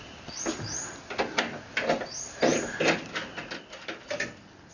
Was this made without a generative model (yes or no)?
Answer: yes